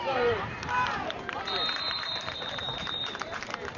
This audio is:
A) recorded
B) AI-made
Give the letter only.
B